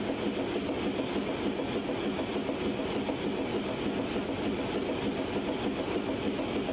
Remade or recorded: recorded